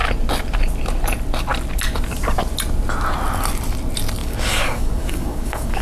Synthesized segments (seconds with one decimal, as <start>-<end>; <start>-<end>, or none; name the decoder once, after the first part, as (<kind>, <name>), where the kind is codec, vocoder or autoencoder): 4.2-5.8 (codec, DAC)